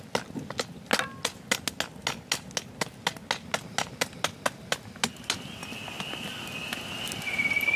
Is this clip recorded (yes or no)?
yes